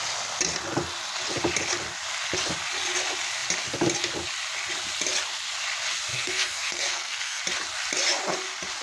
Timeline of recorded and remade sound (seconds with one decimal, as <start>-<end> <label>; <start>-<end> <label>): 0.0-6.1 recorded; 6.1-7.4 remade; 7.4-8.8 recorded

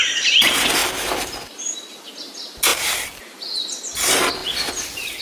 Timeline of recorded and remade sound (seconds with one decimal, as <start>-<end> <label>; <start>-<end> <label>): 0.0-5.2 recorded

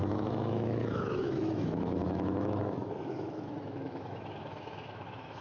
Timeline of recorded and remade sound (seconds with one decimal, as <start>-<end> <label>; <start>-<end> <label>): 0.0-5.4 remade